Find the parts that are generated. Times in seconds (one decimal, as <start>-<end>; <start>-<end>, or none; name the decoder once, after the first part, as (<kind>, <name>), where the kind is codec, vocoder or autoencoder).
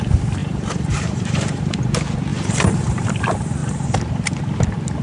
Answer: 0.4-1.8 (vocoder, BigVGAN v2); 2.3-3.1; 3.6-4.4